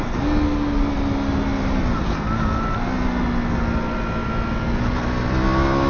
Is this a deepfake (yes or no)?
no